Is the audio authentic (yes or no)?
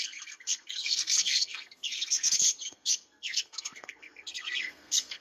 no